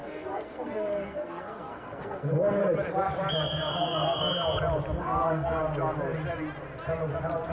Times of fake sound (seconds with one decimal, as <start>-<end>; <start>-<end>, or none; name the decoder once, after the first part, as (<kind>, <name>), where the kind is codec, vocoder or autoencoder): 0.0-2.6 (codec, SNAC); 3.3-4.3; 5.0-5.6